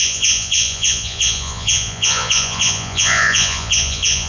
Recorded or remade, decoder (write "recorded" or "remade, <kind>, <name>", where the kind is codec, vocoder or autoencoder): remade, vocoder, Vocos